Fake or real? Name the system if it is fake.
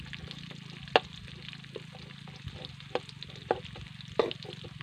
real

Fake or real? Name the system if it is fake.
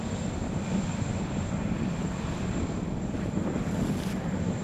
real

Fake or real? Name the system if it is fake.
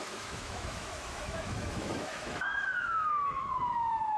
fake, autoencoder, DAC-VAE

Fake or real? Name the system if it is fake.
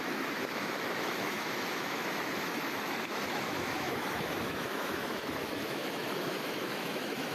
fake, autoencoder, DAC-VAE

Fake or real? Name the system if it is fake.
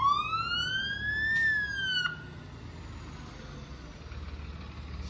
real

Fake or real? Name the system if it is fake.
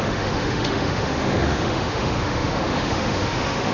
fake, autoencoder, DAC-VAE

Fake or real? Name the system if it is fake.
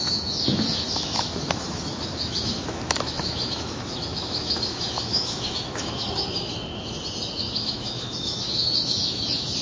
fake, autoencoder, DAC-VAE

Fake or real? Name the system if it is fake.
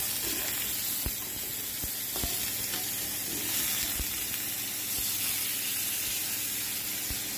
real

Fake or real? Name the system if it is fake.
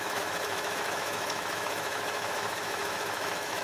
fake, autoencoder, DAC-VAE